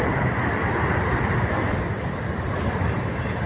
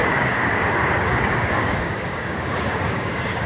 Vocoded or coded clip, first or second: second